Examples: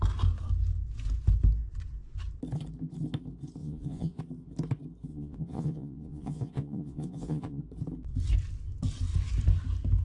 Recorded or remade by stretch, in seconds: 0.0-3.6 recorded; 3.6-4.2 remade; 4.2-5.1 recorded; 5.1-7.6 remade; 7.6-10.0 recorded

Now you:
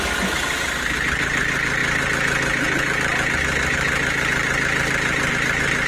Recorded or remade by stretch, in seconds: 0.0-5.9 recorded

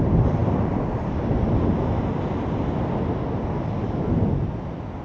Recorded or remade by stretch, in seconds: 0.0-5.0 recorded

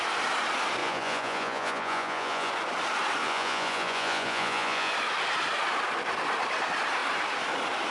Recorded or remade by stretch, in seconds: 0.0-0.8 recorded; 0.8-2.5 remade; 2.5-3.2 recorded; 3.2-4.9 remade; 4.9-7.9 recorded

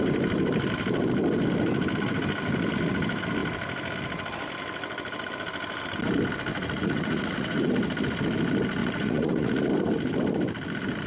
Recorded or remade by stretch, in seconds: 0.0-6.5 recorded; 6.5-7.7 remade; 7.7-8.8 recorded; 8.8-9.7 remade; 9.7-11.1 recorded

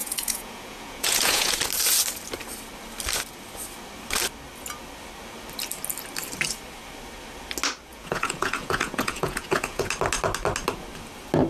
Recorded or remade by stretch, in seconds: 0.0-1.6 remade; 1.6-7.9 recorded; 7.9-9.9 remade; 9.9-11.5 recorded

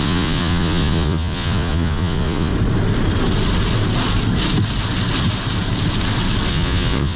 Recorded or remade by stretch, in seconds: 0.0-2.5 remade; 2.5-6.5 recorded; 6.5-7.2 remade